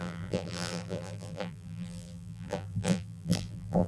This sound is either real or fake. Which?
fake